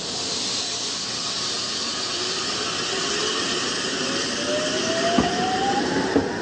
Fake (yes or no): no